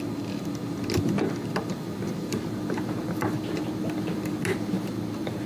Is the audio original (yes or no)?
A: yes